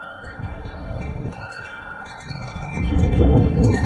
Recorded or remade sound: remade